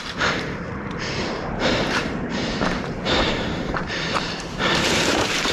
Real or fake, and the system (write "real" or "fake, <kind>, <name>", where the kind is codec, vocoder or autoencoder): fake, vocoder, BigVGAN v2